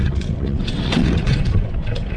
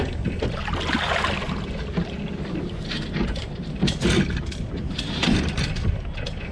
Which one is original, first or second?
second